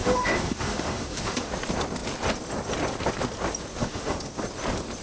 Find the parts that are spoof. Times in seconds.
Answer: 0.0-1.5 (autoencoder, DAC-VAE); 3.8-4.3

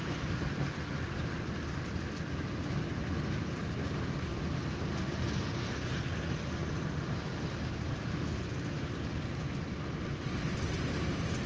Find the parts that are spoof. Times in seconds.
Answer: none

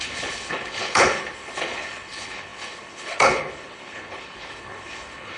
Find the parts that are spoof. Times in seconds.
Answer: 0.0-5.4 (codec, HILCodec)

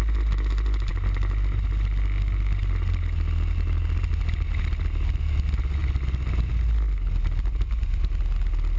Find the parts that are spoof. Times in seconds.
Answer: none

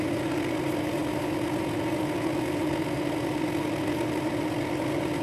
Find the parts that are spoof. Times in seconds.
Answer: none

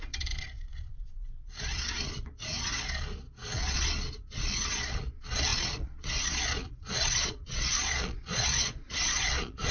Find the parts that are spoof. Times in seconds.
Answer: 0.0-9.7 (vocoder, Vocos)

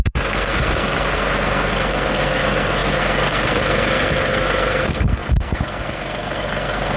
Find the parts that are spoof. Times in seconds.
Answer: 0.0-7.0 (codec, SNAC)